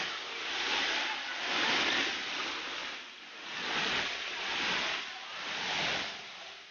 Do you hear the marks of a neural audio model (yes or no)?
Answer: no